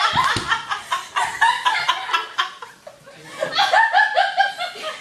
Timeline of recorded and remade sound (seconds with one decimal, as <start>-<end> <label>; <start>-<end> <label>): 0.0-5.0 remade

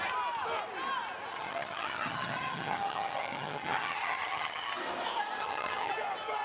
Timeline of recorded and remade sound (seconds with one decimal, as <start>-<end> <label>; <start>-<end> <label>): 0.0-1.3 recorded; 1.3-4.7 remade; 4.7-5.4 recorded; 5.4-5.9 remade; 5.9-6.4 recorded

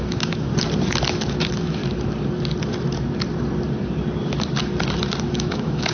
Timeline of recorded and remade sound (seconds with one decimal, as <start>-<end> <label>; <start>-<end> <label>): 0.0-0.5 remade; 0.5-1.1 recorded; 1.1-1.8 remade; 1.8-5.3 recorded; 5.3-5.9 remade

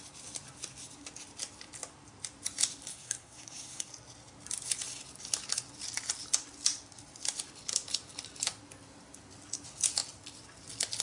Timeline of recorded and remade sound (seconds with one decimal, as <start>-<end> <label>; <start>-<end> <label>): 0.0-2.9 recorded; 2.9-3.9 remade; 3.9-11.0 recorded

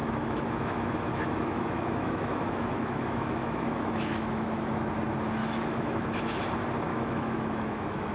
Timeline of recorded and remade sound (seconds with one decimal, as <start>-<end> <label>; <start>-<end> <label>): 0.0-4.9 remade; 4.9-5.4 recorded; 5.4-6.4 remade; 6.4-6.9 recorded; 6.9-8.1 remade

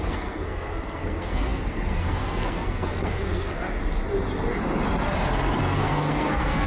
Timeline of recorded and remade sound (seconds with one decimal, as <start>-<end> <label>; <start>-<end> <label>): 0.0-3.6 remade; 3.6-5.6 recorded; 5.6-6.7 remade

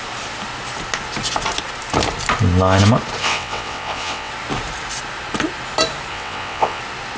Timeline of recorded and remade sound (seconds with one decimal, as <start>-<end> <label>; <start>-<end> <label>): 0.0-3.2 recorded; 3.2-4.3 remade; 4.3-6.1 recorded; 6.1-6.8 remade; 6.8-7.2 recorded

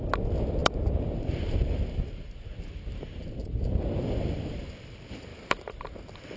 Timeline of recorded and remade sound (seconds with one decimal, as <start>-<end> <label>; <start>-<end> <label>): 0.0-6.4 recorded